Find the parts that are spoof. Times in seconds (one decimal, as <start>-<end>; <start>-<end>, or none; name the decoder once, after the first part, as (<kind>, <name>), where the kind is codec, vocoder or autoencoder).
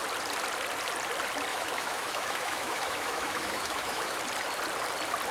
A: 1.5-4.2 (autoencoder, DAC-VAE)